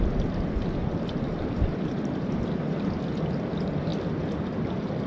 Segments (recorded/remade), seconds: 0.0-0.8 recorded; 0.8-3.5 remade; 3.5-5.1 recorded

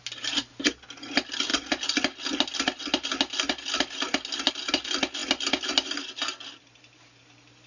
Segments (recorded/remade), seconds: 0.0-7.7 recorded

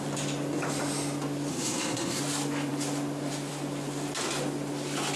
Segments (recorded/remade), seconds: 0.0-1.5 recorded; 1.5-2.2 remade; 2.2-5.2 recorded